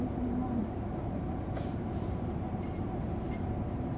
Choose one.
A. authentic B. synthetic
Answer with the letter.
B